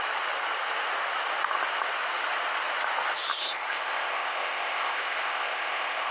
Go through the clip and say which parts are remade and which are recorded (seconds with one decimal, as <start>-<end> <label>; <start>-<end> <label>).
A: 0.0-3.4 recorded; 3.4-6.1 remade